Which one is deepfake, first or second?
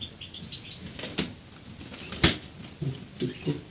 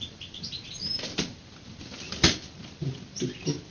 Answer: second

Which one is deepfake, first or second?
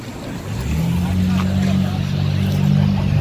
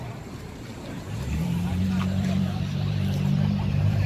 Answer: second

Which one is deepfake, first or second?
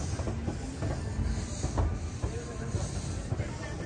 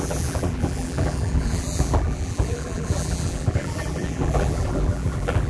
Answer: second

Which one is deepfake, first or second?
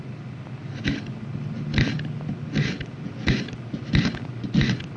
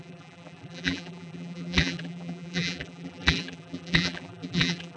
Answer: second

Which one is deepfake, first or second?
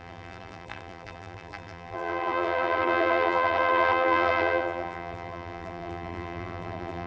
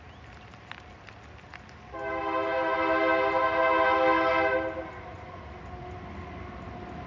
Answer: first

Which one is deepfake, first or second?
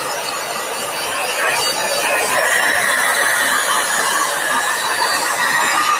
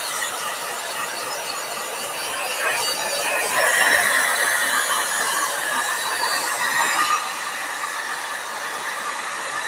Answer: second